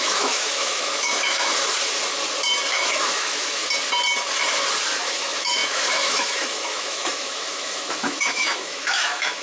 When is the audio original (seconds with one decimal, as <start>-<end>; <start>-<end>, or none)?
1.5-2.7; 3.6-5.0